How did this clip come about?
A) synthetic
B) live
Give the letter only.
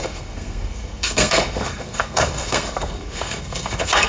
A